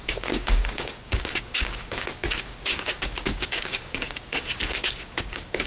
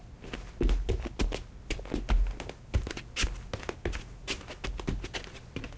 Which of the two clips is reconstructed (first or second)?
first